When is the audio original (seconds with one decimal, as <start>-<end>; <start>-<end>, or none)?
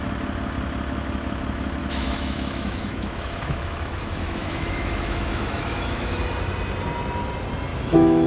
0.0-1.8; 6.2-7.7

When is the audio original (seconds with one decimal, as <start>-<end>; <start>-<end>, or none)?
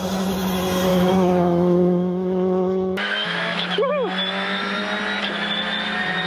0.0-0.9; 3.9-6.3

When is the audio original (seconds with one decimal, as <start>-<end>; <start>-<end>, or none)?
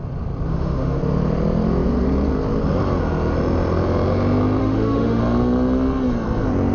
0.0-0.5; 1.0-4.6; 5.2-6.7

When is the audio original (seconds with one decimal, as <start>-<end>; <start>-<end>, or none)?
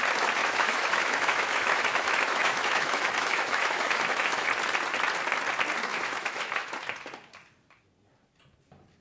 0.0-0.4; 4.5-5.9; 6.7-9.0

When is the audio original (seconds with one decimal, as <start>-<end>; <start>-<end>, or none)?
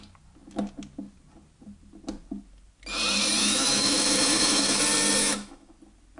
0.0-3.4; 4.8-5.2; 5.7-6.2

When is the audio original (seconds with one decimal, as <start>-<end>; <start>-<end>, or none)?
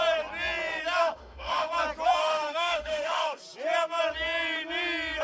0.0-1.0; 1.7-2.2; 3.4-5.2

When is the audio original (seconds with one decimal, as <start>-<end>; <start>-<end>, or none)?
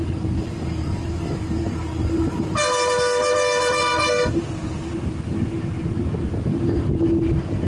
0.0-7.7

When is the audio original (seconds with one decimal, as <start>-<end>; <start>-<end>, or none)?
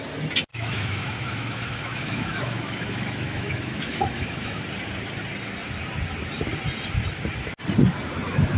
0.0-0.5; 4.6-8.6